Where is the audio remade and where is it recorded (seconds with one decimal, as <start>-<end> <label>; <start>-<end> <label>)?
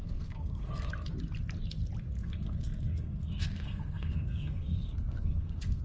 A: 0.0-0.9 remade; 0.9-2.2 recorded; 2.2-5.8 remade